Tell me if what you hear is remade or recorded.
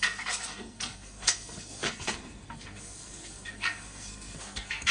remade